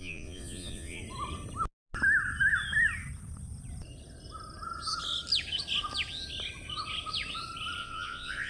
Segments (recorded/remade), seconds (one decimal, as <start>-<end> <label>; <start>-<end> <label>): 0.0-1.0 remade; 1.0-7.8 recorded; 7.8-8.5 remade